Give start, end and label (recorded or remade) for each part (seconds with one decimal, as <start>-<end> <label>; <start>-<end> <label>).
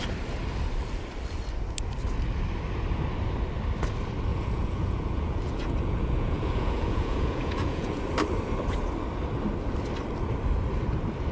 0.0-4.3 recorded; 4.3-8.0 remade; 8.0-11.3 recorded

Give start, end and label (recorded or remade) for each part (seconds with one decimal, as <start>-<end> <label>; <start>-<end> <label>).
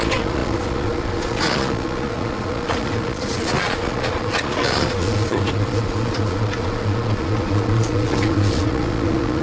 0.0-9.4 remade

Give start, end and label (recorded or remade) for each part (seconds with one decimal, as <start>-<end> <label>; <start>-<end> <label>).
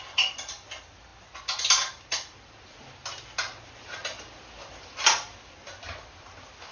0.0-6.7 recorded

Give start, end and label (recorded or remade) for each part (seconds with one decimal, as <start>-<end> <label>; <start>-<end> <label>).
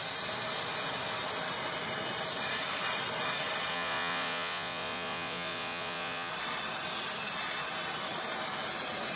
0.0-3.7 recorded; 3.7-6.3 remade; 6.3-9.2 recorded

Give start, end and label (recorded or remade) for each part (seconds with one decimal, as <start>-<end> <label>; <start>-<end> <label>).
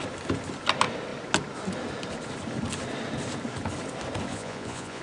0.0-4.3 recorded; 4.3-5.0 remade